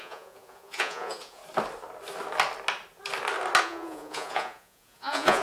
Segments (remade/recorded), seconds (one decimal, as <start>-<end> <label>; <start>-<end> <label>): 0.0-1.4 remade; 1.4-3.6 recorded; 3.6-5.4 remade